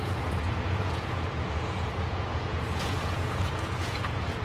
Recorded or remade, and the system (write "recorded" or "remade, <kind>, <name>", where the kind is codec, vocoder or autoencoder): remade, vocoder, Vocos